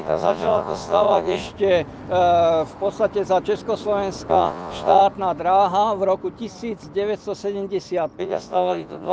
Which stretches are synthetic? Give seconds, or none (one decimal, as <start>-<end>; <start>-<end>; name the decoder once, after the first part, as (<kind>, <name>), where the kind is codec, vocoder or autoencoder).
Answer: 0.0-1.5 (vocoder, Vocos); 4.3-5.0; 8.2-9.1